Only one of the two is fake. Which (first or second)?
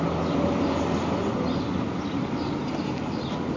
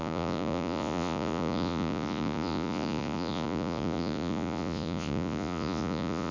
second